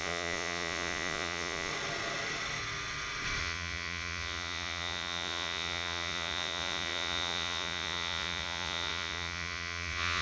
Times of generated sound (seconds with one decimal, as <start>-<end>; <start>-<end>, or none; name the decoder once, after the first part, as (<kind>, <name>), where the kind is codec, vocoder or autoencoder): 0.0-1.7 (vocoder, Vocos); 3.4-10.2